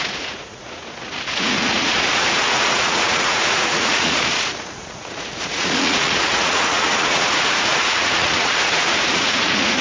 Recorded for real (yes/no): no